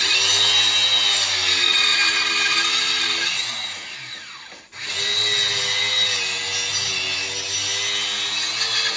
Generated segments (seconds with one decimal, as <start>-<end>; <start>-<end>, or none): none